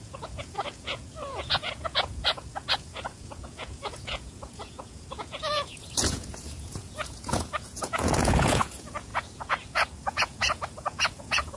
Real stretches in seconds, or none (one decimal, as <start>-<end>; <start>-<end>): none